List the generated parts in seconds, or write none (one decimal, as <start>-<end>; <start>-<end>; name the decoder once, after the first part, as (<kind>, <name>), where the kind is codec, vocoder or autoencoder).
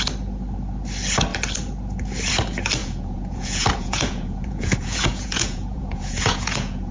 2.8-6.9 (vocoder, Vocos)